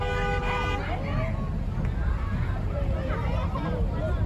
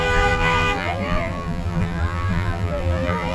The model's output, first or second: second